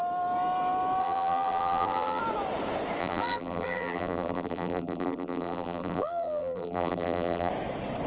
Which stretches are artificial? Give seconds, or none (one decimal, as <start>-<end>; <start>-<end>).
1.0-2.2; 3.0-7.5